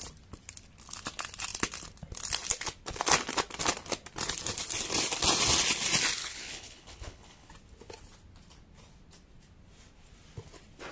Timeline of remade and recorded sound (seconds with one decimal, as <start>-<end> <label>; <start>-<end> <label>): 0.0-6.2 recorded; 6.2-7.5 remade; 7.5-10.9 recorded

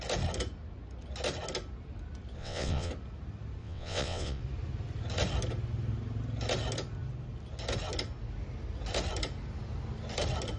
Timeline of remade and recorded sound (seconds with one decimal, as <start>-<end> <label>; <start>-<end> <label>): 0.0-2.4 recorded; 2.4-2.9 remade; 2.9-3.6 recorded; 3.6-4.4 remade; 4.4-10.6 recorded